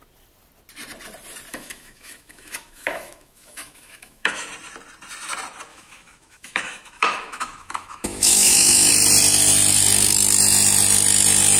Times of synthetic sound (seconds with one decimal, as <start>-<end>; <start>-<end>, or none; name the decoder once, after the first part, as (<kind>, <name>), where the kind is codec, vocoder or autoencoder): 1.5-4.5 (autoencoder, DAC-VAE); 5.7-8.9